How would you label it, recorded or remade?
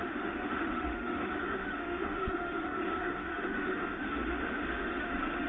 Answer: remade